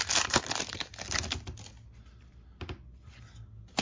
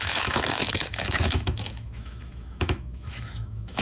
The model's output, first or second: second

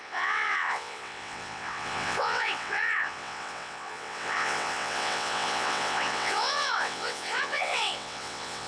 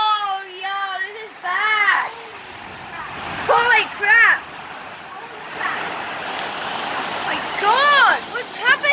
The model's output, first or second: first